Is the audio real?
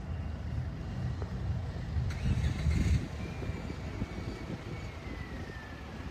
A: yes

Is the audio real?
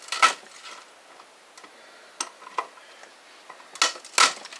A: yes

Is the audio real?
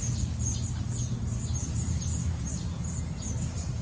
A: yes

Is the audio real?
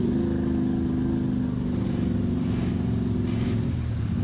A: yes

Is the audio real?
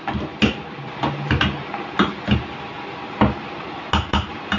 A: yes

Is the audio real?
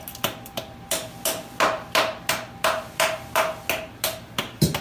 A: yes